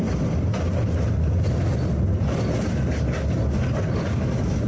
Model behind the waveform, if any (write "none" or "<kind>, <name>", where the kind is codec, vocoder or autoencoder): none